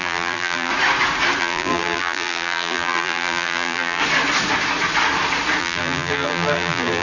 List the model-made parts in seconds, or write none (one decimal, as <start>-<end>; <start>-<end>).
0.0-0.7; 1.4-4.0; 5.6-7.0